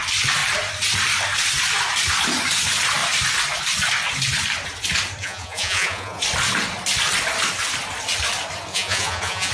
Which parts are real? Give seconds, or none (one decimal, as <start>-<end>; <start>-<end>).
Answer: 0.0-5.2; 6.2-8.7